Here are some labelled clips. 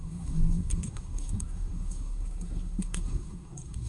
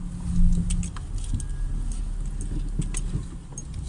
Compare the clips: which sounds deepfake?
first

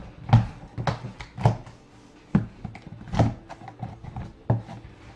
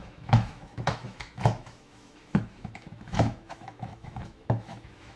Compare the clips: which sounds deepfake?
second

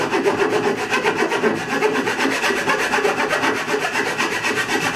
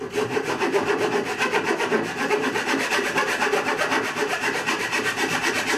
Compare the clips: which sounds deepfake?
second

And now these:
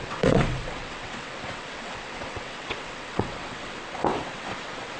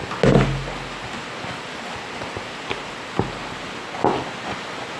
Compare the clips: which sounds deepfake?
first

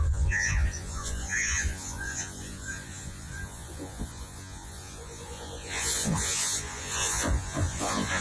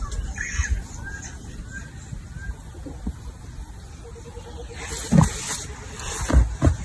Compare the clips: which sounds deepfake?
first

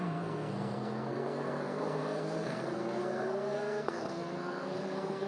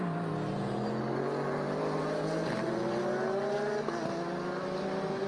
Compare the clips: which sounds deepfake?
first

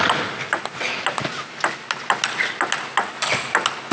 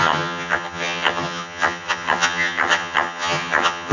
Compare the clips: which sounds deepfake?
second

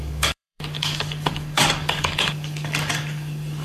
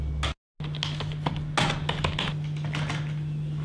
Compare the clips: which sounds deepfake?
first